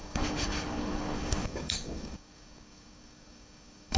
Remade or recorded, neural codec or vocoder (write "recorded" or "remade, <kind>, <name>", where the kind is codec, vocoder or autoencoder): remade, codec, DAC